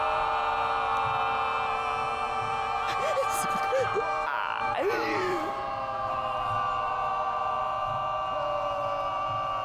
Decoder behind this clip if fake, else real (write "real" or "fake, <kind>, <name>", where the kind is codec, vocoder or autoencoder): real